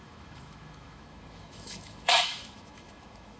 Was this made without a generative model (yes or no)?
no